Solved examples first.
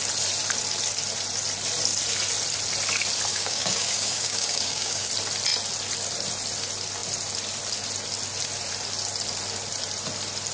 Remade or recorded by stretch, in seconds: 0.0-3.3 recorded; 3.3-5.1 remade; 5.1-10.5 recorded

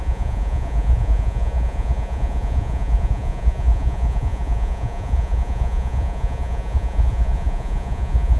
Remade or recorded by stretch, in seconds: 0.0-8.4 remade

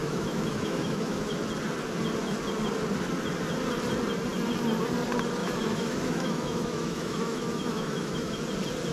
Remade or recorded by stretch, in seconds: 0.0-1.4 remade; 1.4-5.4 recorded; 5.4-8.4 remade; 8.4-8.9 recorded

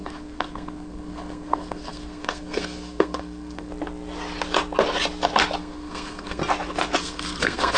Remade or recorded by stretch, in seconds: 0.0-3.7 remade; 3.7-5.6 recorded; 5.6-6.4 remade; 6.4-7.0 recorded; 7.0-7.8 remade

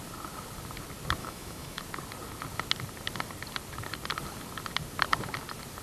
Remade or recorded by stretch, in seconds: 0.0-1.2 recorded; 1.2-1.8 remade; 1.8-5.8 recorded

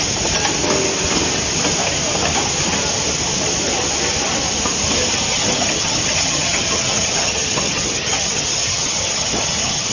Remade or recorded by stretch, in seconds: 0.0-5.3 recorded; 5.3-9.9 remade

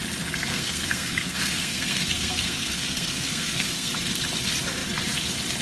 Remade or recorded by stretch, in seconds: 0.0-0.5 recorded; 0.5-3.9 remade; 3.9-5.6 recorded